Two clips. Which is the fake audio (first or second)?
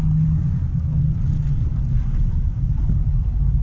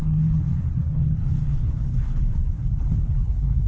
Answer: second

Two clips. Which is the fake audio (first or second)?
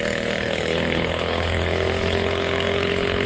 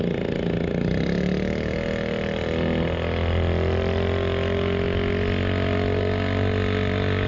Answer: first